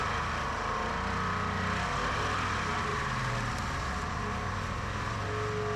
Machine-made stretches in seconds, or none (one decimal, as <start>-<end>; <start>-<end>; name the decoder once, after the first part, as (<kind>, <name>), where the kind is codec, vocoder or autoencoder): 2.9-3.9 (vocoder, BigVGAN v2)